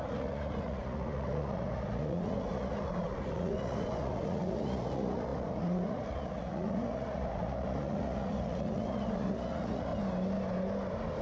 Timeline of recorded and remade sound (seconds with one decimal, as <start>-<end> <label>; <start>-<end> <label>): 0.0-9.9 remade; 9.9-11.2 recorded